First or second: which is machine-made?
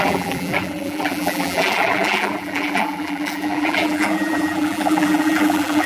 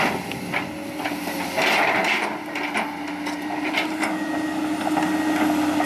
first